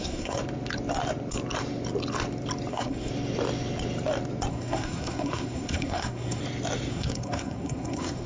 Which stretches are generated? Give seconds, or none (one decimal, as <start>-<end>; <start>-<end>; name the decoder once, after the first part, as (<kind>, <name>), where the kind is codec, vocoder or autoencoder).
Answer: 0.0-0.4 (codec, SNAC); 2.7-3.1; 4.5-6.4; 6.9-8.3